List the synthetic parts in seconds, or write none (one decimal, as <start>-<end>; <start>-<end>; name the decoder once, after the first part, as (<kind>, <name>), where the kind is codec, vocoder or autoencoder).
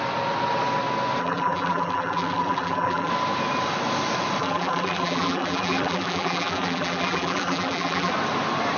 1.2-3.1 (vocoder, BigVGAN v2); 4.4-8.1